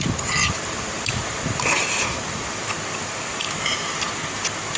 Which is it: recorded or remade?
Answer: recorded